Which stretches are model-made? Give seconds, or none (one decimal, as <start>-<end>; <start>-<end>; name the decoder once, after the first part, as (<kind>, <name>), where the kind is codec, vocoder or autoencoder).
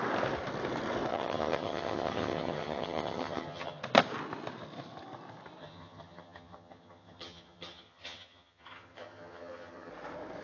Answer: 1.1-3.8 (vocoder, HiFi-GAN); 5.6-9.9